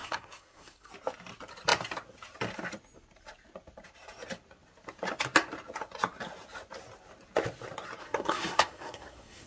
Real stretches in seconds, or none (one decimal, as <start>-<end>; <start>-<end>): 0.9-8.0